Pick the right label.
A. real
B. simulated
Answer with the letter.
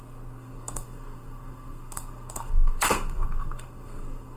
B